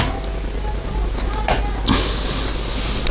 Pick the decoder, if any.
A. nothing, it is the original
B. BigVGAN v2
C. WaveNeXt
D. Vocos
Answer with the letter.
A